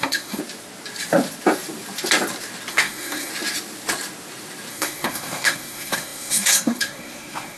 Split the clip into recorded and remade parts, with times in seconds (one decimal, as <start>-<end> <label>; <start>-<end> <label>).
0.0-0.4 remade; 0.4-2.7 recorded; 2.7-3.3 remade; 3.3-4.7 recorded; 4.7-7.6 remade